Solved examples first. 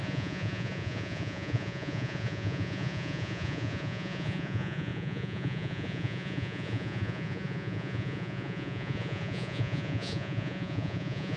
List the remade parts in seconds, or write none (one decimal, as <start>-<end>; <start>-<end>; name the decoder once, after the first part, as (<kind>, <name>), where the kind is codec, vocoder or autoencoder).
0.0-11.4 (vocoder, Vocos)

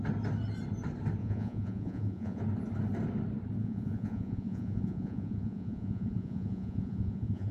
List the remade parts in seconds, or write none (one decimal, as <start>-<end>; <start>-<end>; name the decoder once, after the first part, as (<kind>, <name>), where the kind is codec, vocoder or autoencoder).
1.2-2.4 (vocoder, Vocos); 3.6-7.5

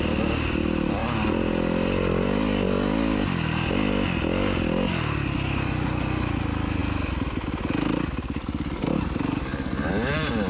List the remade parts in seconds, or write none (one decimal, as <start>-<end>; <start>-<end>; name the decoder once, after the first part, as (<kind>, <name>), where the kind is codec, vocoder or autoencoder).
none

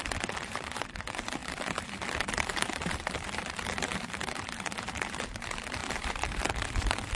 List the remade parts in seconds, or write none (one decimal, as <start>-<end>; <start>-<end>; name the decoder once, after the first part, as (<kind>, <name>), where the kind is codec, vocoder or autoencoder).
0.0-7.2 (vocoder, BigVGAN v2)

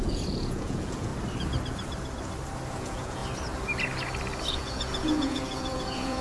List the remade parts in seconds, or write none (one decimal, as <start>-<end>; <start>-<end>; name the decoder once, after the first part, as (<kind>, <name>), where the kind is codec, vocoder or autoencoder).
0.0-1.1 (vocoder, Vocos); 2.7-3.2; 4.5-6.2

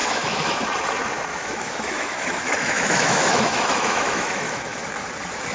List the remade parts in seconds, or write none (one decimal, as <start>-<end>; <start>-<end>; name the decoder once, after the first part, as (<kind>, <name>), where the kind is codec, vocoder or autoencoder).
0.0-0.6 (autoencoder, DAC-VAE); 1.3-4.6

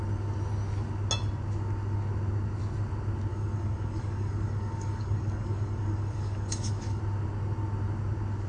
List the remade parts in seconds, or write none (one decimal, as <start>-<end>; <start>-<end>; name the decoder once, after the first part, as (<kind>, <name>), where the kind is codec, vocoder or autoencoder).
3.3-7.0 (codec, DAC)